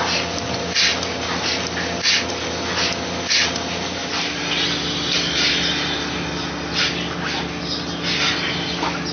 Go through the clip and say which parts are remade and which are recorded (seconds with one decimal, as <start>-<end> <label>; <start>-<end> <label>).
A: 0.0-9.1 recorded